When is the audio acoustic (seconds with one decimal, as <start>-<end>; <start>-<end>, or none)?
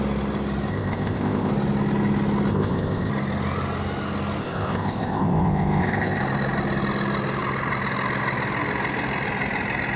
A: 0.0-0.7; 1.5-2.5; 3.1-4.4; 6.2-10.0